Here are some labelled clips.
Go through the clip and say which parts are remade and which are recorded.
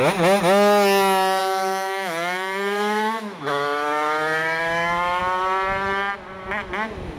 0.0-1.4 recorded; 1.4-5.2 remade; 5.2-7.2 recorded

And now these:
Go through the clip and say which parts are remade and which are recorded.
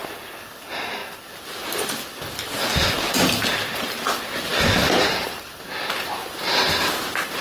0.0-7.4 recorded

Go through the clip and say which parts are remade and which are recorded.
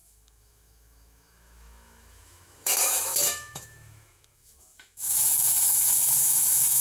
0.0-6.8 remade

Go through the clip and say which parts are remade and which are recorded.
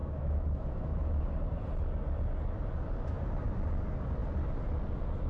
0.0-1.2 remade; 1.2-5.3 recorded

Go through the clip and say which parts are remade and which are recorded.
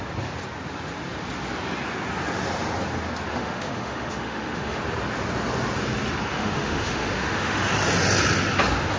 0.0-3.3 recorded; 3.3-4.8 remade; 4.8-6.3 recorded; 6.3-7.6 remade; 7.6-9.0 recorded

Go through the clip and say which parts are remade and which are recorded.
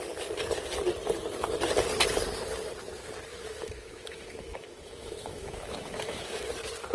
0.0-3.3 recorded; 3.3-6.5 remade; 6.5-6.9 recorded